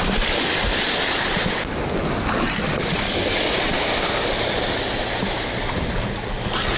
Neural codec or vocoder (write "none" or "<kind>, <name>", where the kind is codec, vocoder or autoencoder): none